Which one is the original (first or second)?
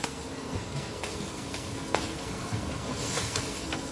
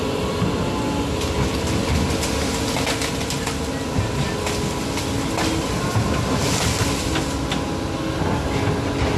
second